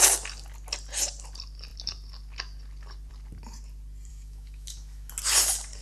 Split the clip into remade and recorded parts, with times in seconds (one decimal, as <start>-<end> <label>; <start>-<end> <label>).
0.0-4.1 recorded; 4.1-5.1 remade; 5.1-5.8 recorded